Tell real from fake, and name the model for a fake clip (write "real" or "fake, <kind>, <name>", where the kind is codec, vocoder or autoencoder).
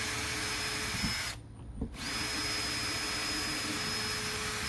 real